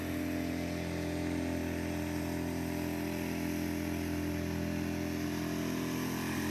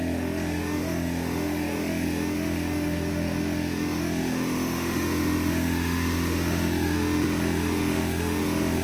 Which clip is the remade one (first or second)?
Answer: second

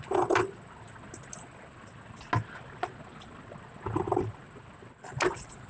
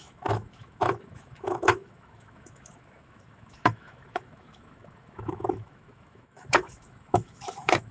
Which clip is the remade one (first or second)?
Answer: second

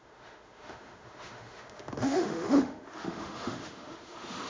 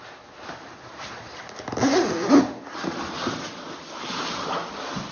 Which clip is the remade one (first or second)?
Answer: first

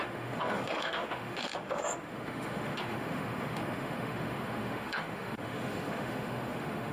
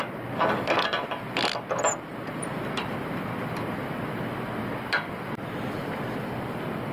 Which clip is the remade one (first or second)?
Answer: first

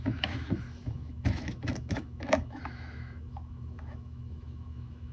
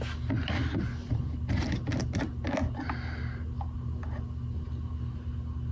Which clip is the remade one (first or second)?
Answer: first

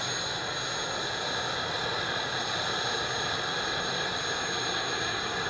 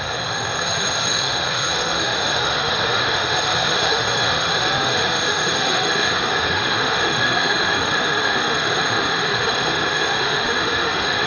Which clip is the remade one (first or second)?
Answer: second